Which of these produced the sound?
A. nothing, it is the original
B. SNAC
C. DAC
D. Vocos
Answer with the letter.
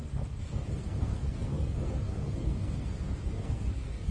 B